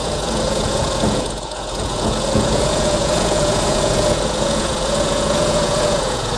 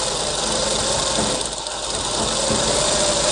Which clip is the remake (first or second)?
first